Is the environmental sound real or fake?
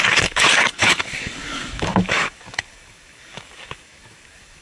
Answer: fake